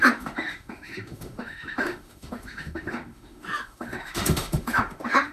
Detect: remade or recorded remade